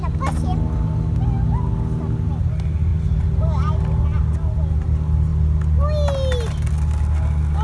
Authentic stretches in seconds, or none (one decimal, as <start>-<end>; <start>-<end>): 0.0-7.6